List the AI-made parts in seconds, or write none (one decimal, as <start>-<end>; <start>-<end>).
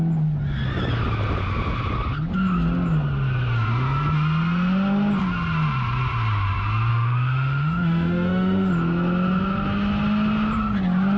6.9-8.7